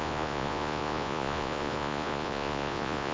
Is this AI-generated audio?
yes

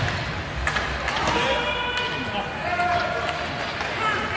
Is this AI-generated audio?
no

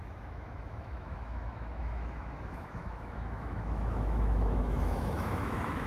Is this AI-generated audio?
yes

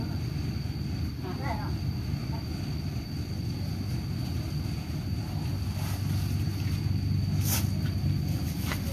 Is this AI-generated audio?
no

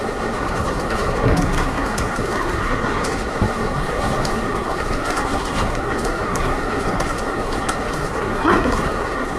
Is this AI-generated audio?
yes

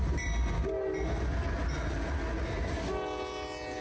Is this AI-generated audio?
no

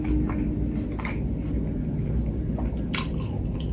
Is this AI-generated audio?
no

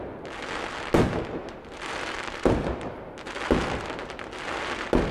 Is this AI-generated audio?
no